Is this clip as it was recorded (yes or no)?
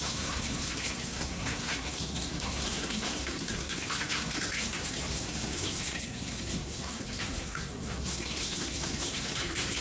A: no